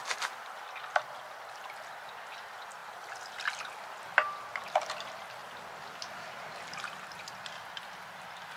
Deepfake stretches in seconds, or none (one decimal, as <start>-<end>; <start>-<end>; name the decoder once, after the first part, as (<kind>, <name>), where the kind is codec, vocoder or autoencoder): none